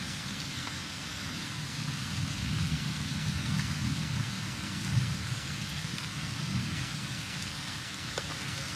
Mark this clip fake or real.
fake